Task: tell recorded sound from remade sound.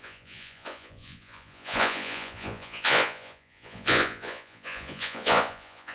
remade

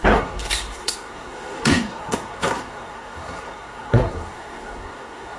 remade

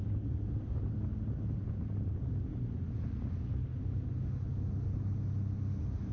recorded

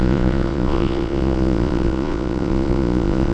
remade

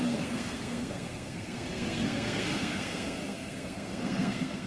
remade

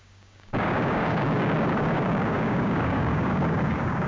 remade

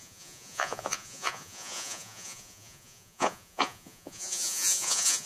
remade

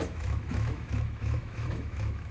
remade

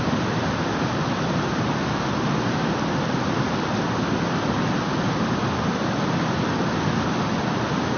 recorded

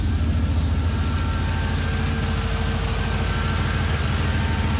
recorded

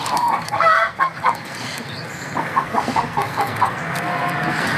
remade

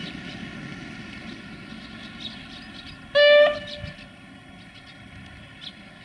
recorded